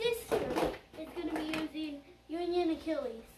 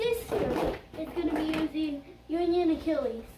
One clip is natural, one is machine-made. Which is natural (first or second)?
first